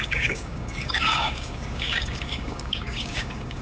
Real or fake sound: fake